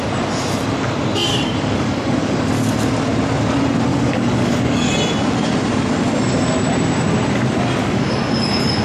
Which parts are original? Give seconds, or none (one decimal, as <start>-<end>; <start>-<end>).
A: 0.0-1.3; 2.5-3.9; 4.9-7.8